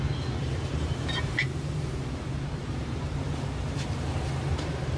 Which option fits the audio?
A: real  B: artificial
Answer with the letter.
B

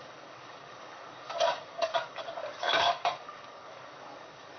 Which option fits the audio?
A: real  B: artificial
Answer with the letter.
B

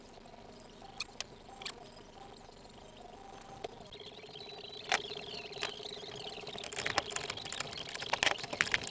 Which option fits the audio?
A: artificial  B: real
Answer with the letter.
B